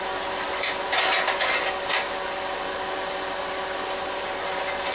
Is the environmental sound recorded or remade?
recorded